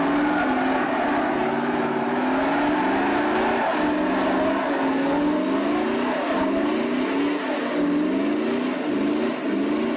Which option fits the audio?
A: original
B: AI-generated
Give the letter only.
A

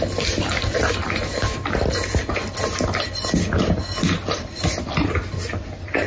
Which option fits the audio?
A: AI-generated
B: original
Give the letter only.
B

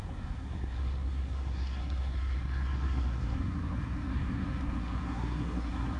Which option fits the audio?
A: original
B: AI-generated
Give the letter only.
B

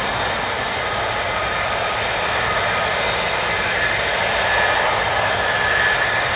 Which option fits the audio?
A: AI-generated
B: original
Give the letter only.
B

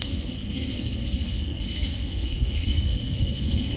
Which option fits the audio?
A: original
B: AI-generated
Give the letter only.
B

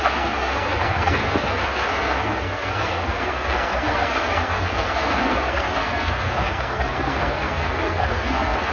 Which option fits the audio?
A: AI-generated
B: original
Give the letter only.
A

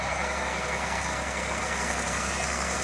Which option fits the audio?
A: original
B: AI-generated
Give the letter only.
B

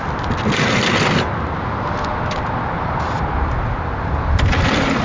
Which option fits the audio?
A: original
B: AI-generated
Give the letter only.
A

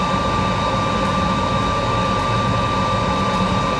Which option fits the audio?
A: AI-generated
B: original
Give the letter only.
B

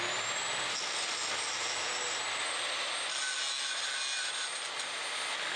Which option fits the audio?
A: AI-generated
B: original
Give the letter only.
B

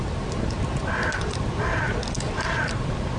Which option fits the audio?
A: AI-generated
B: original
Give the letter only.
B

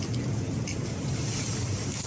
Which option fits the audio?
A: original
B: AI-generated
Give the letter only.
A